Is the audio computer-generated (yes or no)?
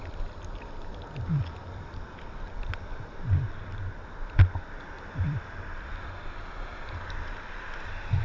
no